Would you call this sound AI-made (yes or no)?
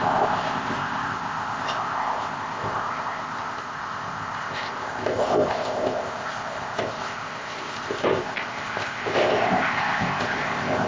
yes